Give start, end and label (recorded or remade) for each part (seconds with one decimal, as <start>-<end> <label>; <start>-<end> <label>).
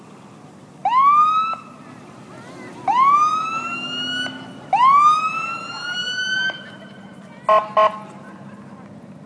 0.0-9.3 recorded